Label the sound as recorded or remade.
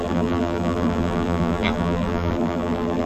remade